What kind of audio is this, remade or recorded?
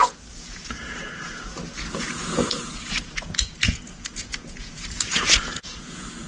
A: remade